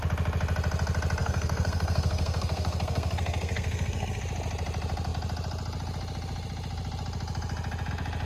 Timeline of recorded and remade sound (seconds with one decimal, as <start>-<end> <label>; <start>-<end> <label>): 0.0-1.2 recorded; 1.2-4.2 remade; 4.2-8.3 recorded